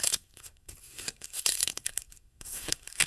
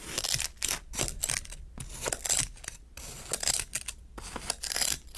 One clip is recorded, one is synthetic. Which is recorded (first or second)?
second